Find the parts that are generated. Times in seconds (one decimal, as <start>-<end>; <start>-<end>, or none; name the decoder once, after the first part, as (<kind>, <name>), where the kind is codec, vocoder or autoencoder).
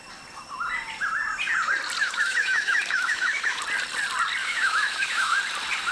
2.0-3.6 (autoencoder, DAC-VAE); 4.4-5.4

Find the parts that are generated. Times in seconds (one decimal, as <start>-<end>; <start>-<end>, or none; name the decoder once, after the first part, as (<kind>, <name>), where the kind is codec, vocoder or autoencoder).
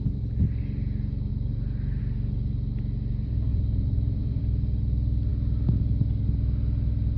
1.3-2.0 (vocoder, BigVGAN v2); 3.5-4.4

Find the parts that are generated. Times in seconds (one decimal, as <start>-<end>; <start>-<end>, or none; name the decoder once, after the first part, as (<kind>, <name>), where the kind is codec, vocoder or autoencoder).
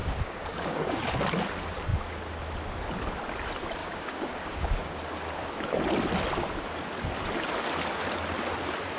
0.0-1.0 (codec, DAC); 3.8-5.0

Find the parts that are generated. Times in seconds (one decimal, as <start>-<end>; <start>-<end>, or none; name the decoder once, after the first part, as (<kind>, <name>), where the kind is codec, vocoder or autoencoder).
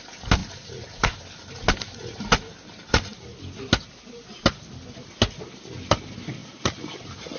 none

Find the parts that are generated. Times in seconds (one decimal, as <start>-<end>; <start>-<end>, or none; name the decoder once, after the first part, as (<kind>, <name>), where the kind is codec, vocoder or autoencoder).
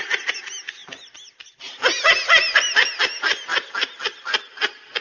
none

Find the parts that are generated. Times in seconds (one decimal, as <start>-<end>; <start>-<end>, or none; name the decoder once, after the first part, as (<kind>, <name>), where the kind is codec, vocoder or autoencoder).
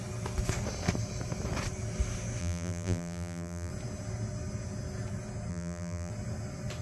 2.4-3.7 (vocoder, BigVGAN v2); 5.5-6.1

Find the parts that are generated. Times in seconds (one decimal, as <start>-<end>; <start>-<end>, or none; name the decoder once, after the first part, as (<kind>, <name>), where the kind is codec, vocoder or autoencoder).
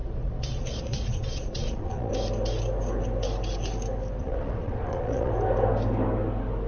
0.0-2.1 (vocoder, Vocos); 4.2-5.3